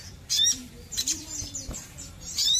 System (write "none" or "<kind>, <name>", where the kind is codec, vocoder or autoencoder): vocoder, BigVGAN v2